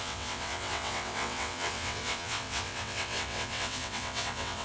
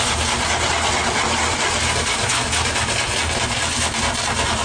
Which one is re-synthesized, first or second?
first